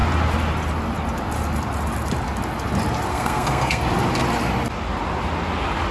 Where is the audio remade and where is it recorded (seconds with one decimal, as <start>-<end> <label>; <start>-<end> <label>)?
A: 0.0-3.1 recorded; 3.1-3.8 remade; 3.8-5.9 recorded